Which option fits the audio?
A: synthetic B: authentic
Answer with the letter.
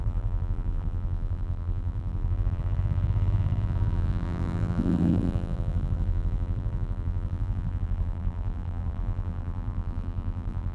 A